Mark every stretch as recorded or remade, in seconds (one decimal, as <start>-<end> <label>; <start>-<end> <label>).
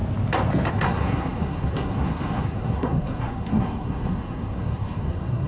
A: 0.0-0.7 recorded; 0.7-5.5 remade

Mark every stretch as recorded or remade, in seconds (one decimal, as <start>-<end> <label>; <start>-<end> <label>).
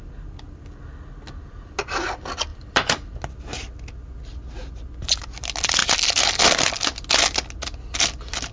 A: 0.0-2.5 recorded; 2.5-3.1 remade; 3.1-5.8 recorded; 5.8-6.4 remade; 6.4-8.5 recorded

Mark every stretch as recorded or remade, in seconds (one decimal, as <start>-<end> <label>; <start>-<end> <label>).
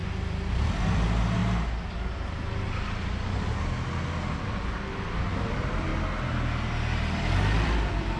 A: 0.0-0.9 recorded; 0.9-1.4 remade; 1.4-5.5 recorded; 5.5-5.9 remade; 5.9-6.9 recorded; 6.9-8.2 remade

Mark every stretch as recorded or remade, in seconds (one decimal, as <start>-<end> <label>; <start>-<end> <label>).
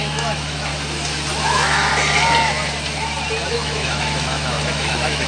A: 0.0-0.7 remade; 0.7-1.4 recorded; 1.4-1.9 remade; 1.9-3.5 recorded; 3.5-5.3 remade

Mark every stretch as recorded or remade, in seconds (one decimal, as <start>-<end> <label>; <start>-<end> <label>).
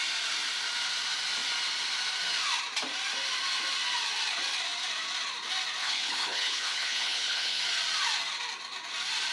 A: 0.0-5.8 recorded; 5.8-7.6 remade; 7.6-9.3 recorded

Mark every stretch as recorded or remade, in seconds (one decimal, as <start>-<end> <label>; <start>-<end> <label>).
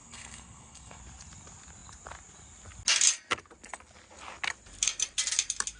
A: 0.0-1.0 remade; 1.0-5.8 recorded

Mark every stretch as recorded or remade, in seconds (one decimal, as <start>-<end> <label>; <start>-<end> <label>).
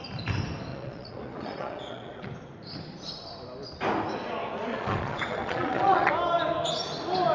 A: 0.0-0.7 recorded; 0.7-2.3 remade; 2.3-4.7 recorded; 4.7-6.1 remade; 6.1-7.3 recorded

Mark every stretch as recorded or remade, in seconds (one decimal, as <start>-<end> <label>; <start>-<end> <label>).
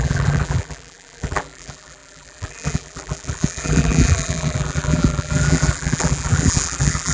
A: 0.0-7.1 remade